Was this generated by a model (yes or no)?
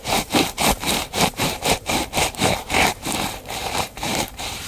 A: yes